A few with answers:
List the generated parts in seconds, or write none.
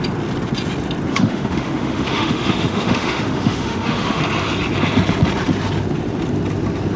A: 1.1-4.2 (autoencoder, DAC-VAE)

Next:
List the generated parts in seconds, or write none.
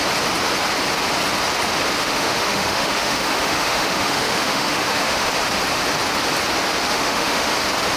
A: 2.0-5.3 (autoencoder, DAC-VAE); 6.9-7.5